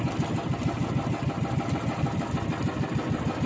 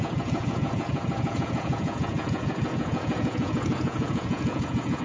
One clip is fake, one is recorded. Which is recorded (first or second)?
first